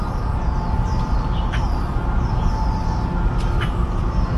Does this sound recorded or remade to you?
recorded